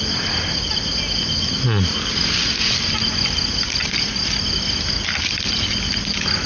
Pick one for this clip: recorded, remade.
recorded